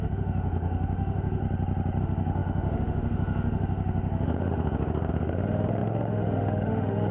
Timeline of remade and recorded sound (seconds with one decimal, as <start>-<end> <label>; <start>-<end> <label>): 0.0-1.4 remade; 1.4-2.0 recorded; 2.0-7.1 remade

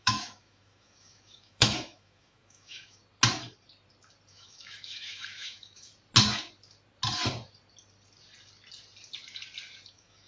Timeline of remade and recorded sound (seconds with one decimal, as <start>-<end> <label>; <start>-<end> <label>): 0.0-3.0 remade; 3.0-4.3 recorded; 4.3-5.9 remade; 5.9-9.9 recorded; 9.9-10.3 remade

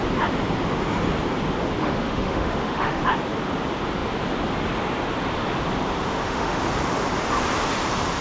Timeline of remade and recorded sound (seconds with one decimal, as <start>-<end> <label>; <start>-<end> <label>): 0.0-1.8 recorded; 1.8-3.0 remade; 3.0-6.0 recorded; 6.0-6.6 remade; 6.6-8.2 recorded

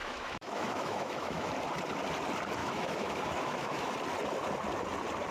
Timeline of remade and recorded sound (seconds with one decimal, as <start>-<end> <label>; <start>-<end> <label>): 0.0-1.5 remade; 1.5-2.6 recorded; 2.6-3.9 remade; 3.9-5.3 recorded

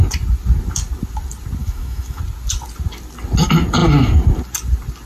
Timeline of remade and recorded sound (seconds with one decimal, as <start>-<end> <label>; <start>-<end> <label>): 0.0-1.6 recorded; 1.6-2.2 remade; 2.2-5.1 recorded

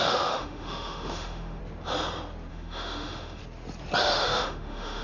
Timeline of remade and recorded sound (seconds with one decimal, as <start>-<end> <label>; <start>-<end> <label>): 0.0-1.6 remade; 1.6-2.5 recorded; 2.5-3.4 remade; 3.4-4.0 recorded; 4.0-5.0 remade

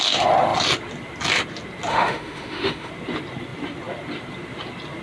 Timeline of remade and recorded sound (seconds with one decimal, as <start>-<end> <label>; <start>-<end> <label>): 0.0-1.9 recorded; 1.9-2.9 remade; 2.9-5.0 recorded